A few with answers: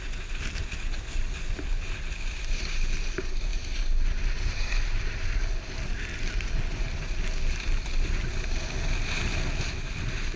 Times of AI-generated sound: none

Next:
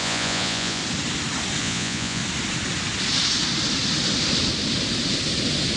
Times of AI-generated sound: 0.0-0.8 (vocoder, Vocos); 1.6-2.2